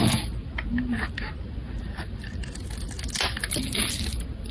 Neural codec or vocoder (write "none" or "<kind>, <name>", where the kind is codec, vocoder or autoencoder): none